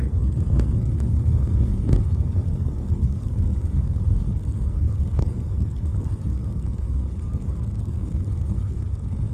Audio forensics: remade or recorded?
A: remade